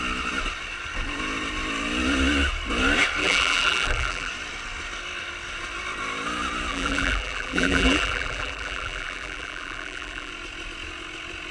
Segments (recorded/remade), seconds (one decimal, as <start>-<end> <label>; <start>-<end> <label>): 0.0-3.2 recorded; 3.2-4.3 remade; 4.3-6.7 recorded; 6.7-10.3 remade; 10.3-11.5 recorded